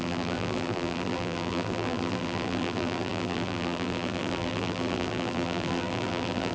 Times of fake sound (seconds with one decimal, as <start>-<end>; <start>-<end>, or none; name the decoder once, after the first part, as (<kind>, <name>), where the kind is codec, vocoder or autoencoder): 0.0-6.5 (vocoder, BigVGAN v2)